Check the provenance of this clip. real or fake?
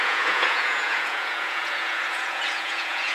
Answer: fake